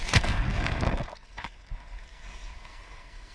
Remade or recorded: remade